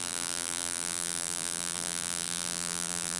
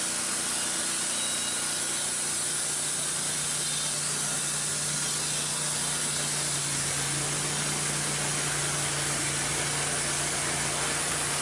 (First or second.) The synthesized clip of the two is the first